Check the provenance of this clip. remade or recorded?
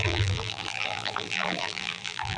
remade